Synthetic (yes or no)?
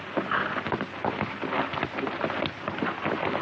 no